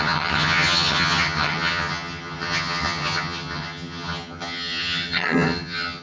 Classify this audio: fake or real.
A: fake